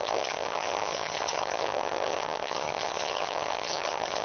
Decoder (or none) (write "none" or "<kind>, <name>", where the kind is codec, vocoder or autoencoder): vocoder, HiFi-GAN